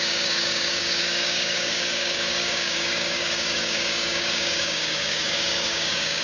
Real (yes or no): no